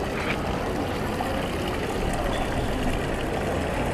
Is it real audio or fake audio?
real